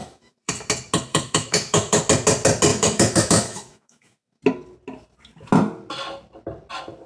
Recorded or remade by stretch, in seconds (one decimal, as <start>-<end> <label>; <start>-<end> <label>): 0.0-0.5 remade; 0.5-1.1 recorded; 1.1-2.0 remade; 2.0-2.7 recorded; 2.7-4.4 remade; 4.4-7.1 recorded